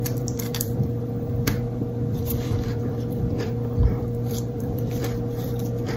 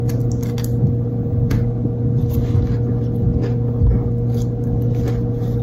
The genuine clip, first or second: second